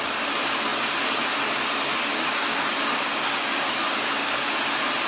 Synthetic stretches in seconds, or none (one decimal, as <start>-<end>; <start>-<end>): 2.1-4.5